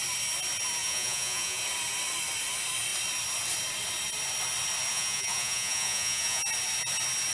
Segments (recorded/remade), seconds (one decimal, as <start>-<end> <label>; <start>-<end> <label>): 0.0-0.8 recorded; 0.8-1.6 remade; 1.6-4.9 recorded; 4.9-6.4 remade; 6.4-7.3 recorded